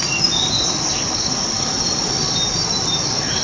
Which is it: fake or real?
real